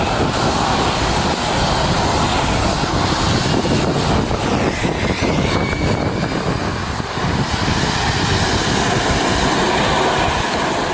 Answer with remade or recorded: recorded